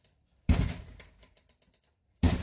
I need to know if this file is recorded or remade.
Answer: remade